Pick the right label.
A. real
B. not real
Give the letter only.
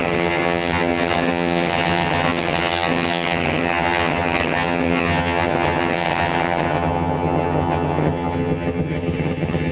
B